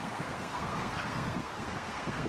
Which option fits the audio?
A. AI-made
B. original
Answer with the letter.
A